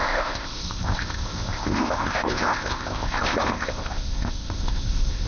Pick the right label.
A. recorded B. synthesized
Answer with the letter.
B